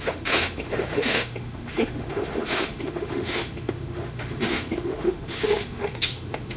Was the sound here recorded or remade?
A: remade